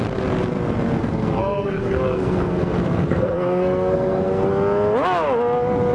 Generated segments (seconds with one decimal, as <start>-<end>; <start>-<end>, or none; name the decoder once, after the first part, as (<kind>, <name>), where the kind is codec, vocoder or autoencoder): 1.0-4.5 (codec, SNAC)